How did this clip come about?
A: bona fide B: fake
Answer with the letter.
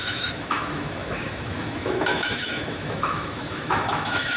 B